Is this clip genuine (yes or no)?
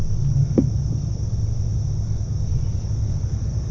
yes